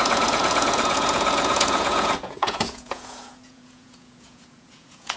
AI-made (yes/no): yes